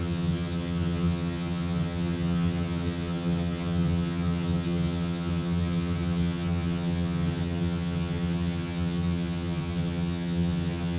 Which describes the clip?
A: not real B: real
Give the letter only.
A